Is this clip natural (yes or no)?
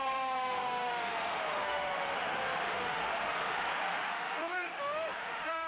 no